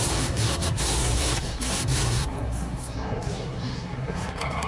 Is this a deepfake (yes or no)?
yes